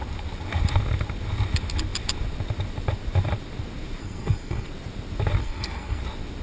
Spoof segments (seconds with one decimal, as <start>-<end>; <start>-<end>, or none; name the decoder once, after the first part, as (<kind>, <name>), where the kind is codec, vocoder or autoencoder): 4.0-4.7 (codec, SNAC); 5.4-6.0

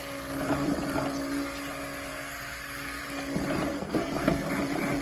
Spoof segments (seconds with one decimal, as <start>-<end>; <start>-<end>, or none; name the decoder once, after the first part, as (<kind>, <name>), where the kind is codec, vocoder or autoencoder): 2.1-3.0 (codec, SNAC); 3.7-4.5

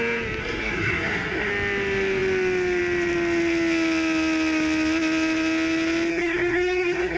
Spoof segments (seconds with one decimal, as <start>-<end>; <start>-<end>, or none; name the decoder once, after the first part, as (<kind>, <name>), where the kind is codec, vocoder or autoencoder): 0.4-1.5 (codec, SNAC); 6.1-7.2

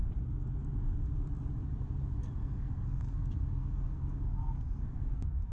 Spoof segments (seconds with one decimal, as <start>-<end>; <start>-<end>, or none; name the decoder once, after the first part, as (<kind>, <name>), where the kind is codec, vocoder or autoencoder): 2.4-5.5 (codec, SNAC)